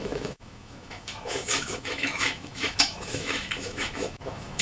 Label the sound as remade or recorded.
remade